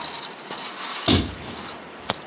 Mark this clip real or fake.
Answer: real